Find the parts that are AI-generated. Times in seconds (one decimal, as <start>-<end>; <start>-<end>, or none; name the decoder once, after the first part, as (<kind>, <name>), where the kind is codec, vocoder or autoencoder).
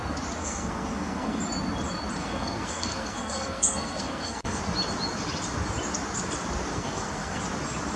0.4-1.4 (codec, SNAC); 2.2-4.6; 6.7-7.4